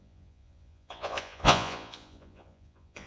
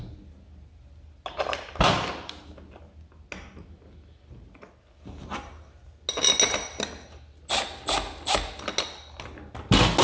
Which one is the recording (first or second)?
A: second